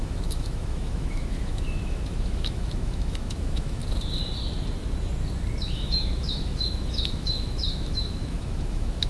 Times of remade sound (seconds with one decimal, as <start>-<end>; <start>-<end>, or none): 0.0-3.8; 5.6-9.1